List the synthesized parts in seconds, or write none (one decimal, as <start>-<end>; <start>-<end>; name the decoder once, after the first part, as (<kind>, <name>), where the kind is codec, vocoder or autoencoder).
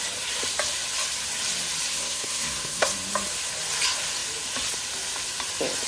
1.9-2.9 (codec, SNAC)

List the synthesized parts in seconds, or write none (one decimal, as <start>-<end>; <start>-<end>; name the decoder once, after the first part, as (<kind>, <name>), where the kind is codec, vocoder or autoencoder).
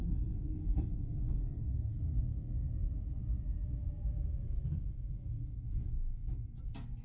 0.0-2.0 (codec, SNAC)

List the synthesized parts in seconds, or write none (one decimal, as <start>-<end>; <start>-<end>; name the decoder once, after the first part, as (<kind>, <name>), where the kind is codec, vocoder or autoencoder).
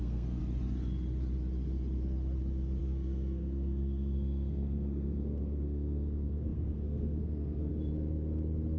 0.0-0.4 (codec, SNAC); 2.8-7.7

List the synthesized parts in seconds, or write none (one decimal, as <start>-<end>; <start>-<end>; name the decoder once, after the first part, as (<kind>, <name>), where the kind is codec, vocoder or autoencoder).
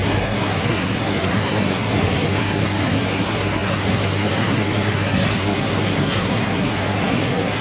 0.0-7.6 (codec, SNAC)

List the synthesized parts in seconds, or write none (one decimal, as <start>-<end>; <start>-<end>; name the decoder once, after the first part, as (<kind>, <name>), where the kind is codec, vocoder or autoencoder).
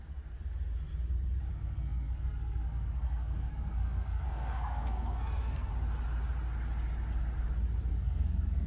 1.5-5.7 (codec, SNAC); 7.9-8.7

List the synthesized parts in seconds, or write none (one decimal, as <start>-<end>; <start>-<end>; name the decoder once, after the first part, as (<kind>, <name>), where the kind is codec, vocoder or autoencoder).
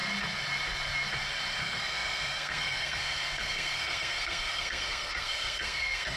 1.6-6.2 (codec, SNAC)